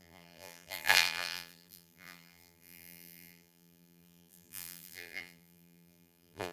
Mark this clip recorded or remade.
remade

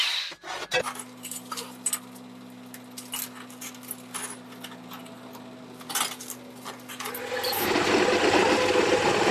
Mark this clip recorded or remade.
recorded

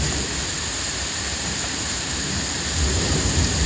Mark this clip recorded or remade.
remade